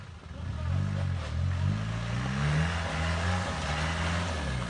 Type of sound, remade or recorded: recorded